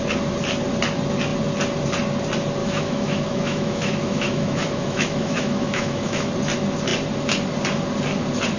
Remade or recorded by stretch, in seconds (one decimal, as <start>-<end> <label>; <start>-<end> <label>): 0.0-2.6 recorded; 2.6-6.3 remade; 6.3-8.6 recorded

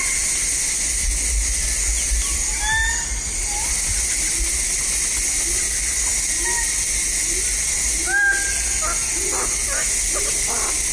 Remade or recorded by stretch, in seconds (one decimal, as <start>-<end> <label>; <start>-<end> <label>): 0.0-10.9 recorded

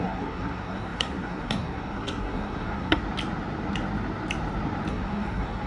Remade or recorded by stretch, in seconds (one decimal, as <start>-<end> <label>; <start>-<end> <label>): 0.0-3.0 remade; 3.0-4.9 recorded; 4.9-5.7 remade

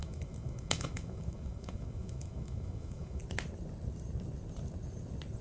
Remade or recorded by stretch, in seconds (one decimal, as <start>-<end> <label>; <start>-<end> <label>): 0.0-3.2 remade; 3.2-5.4 recorded

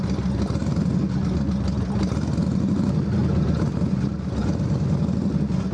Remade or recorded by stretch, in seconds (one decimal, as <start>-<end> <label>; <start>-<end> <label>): 0.0-5.7 recorded